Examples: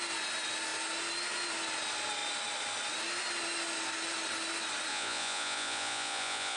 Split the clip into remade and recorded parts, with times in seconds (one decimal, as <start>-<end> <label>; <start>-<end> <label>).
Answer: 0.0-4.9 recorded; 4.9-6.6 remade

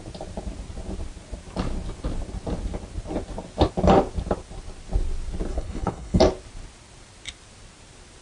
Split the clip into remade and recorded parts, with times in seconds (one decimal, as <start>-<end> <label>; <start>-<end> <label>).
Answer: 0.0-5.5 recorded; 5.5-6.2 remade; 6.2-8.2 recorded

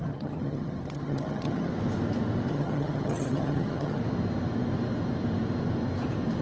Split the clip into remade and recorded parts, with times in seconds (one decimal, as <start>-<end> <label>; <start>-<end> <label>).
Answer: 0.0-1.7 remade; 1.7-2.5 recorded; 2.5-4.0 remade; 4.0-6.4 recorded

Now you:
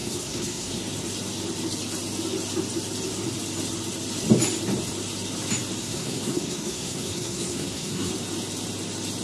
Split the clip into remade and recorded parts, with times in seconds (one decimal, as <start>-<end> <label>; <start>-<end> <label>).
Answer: 0.0-0.8 remade; 0.8-5.8 recorded; 5.8-8.1 remade; 8.1-9.2 recorded

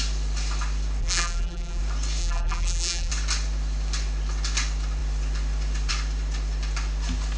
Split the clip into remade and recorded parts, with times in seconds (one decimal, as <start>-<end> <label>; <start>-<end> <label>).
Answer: 0.0-1.0 recorded; 1.0-1.8 remade; 1.8-2.2 recorded; 2.2-3.1 remade; 3.1-7.4 recorded

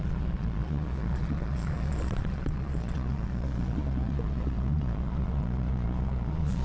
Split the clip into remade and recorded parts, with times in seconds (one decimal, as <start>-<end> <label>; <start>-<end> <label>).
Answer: 0.0-6.6 remade

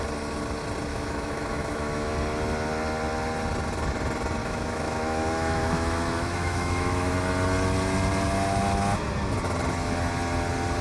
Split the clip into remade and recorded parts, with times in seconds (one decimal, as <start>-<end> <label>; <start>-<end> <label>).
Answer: 0.0-0.9 recorded; 0.9-2.1 remade; 2.1-4.4 recorded; 4.4-7.1 remade; 7.1-10.8 recorded